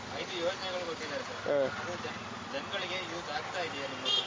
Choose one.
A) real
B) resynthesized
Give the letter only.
A